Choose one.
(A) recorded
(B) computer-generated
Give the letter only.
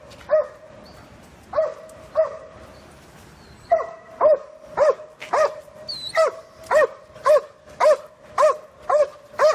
A